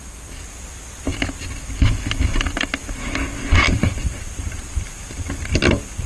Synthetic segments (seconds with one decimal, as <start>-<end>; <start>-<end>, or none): 0.0-1.1; 3.0-6.1